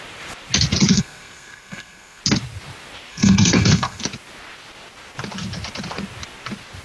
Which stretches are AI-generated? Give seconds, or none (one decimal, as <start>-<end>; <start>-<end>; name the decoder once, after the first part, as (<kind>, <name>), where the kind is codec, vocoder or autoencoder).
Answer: 0.9-2.2 (codec, SNAC); 3.1-4.0